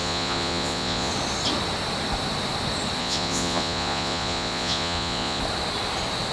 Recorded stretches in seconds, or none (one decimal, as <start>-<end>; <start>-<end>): 1.1-3.0; 5.4-6.3